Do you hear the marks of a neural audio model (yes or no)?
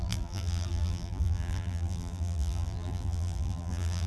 yes